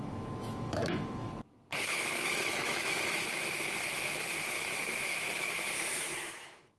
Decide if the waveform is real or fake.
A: fake